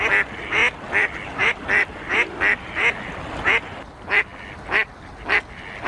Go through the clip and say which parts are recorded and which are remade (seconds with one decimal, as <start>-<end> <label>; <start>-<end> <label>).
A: 0.0-5.9 recorded